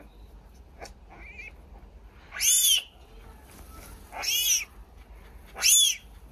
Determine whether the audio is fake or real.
real